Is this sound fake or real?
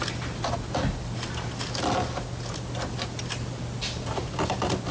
real